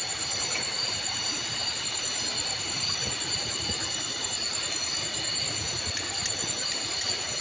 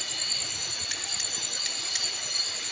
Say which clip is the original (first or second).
second